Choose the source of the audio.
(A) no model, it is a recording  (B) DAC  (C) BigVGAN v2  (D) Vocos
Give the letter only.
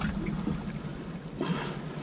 A